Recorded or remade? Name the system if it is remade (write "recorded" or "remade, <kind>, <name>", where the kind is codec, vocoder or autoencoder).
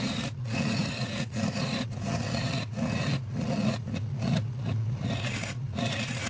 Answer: remade, vocoder, Vocos